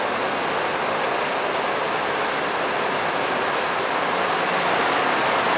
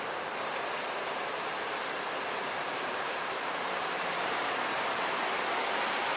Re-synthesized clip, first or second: second